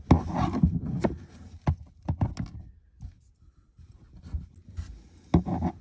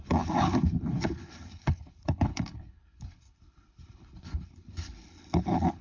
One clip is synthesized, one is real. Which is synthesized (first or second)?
second